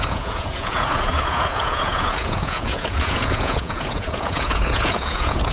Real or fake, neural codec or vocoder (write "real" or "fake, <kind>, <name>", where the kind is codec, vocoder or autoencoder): fake, vocoder, Vocos